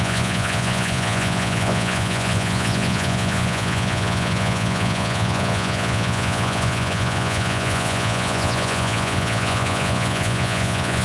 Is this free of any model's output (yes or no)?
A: no